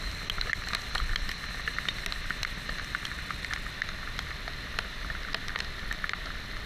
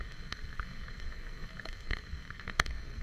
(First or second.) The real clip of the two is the first